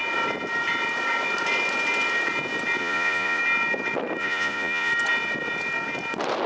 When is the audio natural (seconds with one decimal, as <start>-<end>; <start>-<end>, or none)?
0.0-2.8; 3.4-4.2; 4.9-6.5